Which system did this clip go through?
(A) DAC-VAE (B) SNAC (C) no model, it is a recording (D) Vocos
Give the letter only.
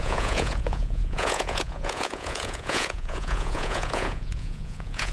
D